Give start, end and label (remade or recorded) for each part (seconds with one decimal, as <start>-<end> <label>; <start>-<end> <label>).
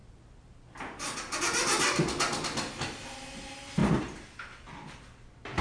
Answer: 0.0-5.6 recorded